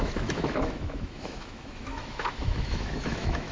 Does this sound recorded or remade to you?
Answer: remade